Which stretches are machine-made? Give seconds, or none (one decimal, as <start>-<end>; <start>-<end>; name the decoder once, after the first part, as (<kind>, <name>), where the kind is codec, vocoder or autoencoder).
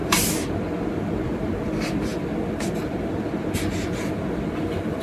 0.0-5.0 (vocoder, BigVGAN v2)